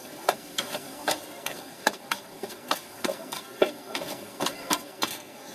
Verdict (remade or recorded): remade